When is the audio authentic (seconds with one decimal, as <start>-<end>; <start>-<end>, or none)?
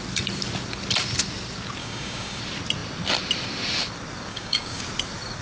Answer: 0.0-1.8; 2.4-4.3; 4.8-5.4